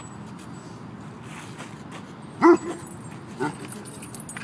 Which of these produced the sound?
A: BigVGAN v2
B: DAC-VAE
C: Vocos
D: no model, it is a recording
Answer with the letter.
D